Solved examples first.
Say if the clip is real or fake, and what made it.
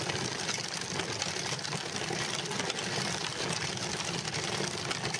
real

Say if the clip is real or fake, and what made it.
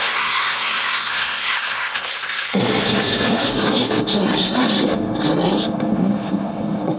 fake, codec, SNAC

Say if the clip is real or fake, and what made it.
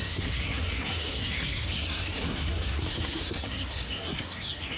fake, codec, SNAC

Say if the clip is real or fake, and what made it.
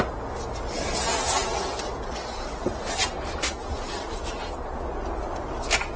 real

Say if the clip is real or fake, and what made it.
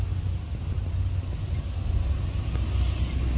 real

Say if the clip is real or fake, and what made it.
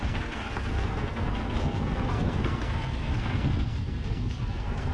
fake, codec, SNAC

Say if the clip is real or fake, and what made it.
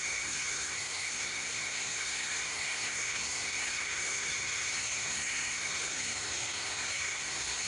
fake, codec, SNAC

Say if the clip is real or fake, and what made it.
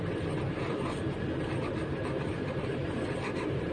real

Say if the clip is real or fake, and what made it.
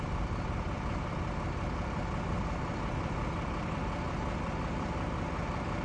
real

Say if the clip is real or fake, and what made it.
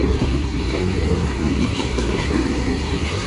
fake, codec, SNAC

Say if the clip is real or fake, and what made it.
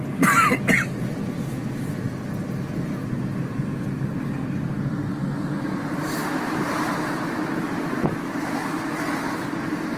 real